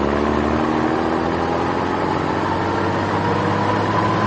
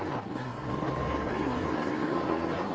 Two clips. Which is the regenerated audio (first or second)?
second